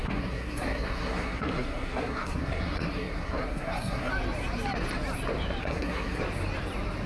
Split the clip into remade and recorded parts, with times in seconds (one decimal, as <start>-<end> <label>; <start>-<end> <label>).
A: 0.0-4.1 remade; 4.1-5.6 recorded; 5.6-6.2 remade; 6.2-7.1 recorded